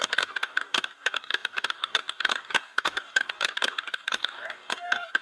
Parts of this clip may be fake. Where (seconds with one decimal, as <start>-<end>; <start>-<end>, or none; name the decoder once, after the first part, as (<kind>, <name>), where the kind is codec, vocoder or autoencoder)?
0.0-5.2 (codec, DAC)

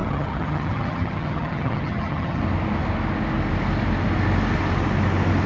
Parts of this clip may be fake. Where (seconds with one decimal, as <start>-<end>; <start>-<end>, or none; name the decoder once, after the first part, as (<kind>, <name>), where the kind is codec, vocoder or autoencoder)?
0.0-2.4 (vocoder, HiFi-GAN)